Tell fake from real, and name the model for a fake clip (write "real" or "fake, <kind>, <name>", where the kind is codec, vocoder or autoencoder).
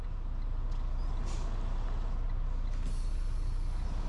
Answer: real